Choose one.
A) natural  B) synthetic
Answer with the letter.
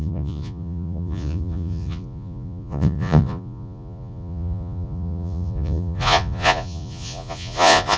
B